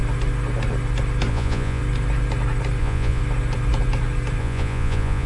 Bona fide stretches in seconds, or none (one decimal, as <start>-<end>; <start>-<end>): 0.0-1.3; 1.8-2.8; 3.2-4.4

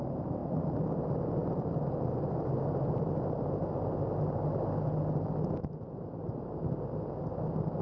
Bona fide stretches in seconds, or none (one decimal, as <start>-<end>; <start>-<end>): 0.0-7.8

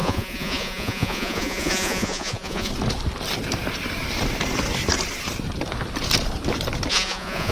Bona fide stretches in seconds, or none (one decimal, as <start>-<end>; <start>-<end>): 2.7-6.9

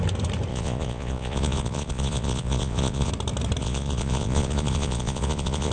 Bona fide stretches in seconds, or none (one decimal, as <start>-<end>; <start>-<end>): 0.0-0.5; 3.1-3.6

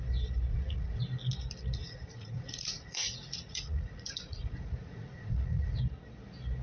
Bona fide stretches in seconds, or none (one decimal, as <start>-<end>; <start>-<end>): 0.0-0.5; 1.0-1.8; 5.8-6.6